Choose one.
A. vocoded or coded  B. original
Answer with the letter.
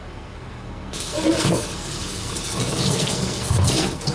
A